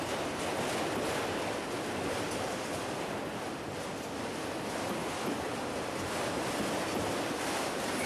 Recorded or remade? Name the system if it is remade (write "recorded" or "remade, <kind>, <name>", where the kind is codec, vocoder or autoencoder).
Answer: recorded